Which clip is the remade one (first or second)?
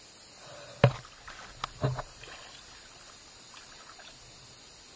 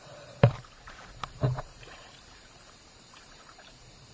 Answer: second